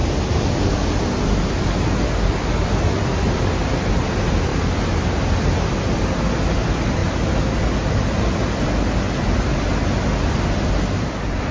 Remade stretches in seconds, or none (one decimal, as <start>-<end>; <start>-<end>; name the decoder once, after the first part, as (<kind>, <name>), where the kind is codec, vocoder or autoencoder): none